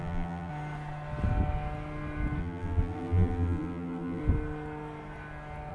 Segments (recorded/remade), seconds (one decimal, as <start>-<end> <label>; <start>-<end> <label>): 0.0-0.5 remade; 0.5-2.4 recorded; 2.4-4.2 remade; 4.2-5.7 recorded